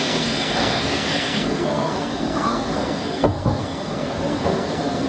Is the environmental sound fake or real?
fake